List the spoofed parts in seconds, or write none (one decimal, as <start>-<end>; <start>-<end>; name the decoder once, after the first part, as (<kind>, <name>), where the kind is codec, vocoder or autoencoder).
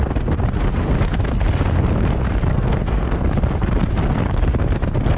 2.5-3.2 (codec, SNAC)